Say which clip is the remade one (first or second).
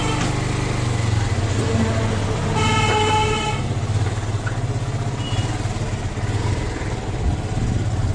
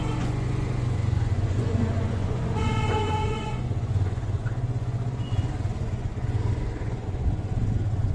second